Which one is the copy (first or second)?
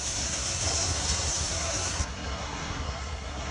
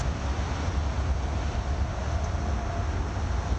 first